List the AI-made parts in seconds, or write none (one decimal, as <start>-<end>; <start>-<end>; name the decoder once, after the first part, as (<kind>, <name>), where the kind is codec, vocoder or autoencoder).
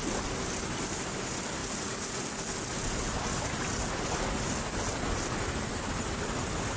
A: none